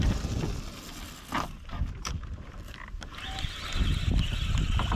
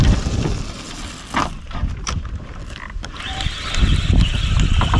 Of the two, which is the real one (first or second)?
first